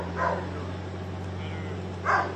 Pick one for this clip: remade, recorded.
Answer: recorded